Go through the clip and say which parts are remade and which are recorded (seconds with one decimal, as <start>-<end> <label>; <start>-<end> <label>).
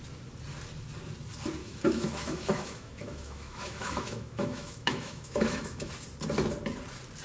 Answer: 0.0-1.6 recorded; 1.6-5.9 remade; 5.9-7.2 recorded